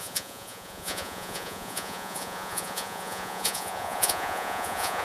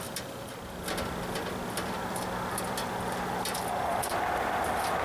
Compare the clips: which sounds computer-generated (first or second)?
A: first